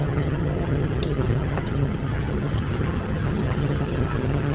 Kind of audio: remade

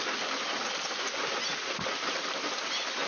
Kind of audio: recorded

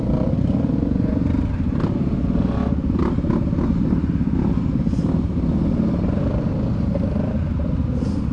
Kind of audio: recorded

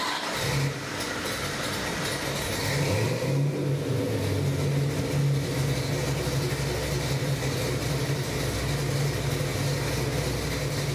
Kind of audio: recorded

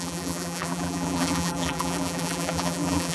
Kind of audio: remade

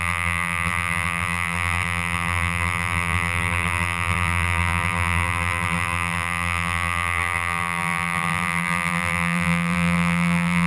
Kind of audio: remade